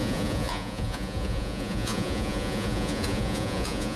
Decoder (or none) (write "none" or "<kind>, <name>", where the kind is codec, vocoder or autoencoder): vocoder, Vocos